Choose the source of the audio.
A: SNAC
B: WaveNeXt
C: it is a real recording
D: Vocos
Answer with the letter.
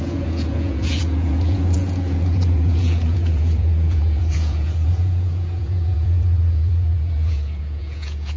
D